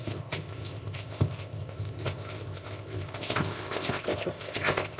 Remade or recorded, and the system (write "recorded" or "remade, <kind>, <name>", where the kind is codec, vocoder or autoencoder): remade, codec, ZipCodec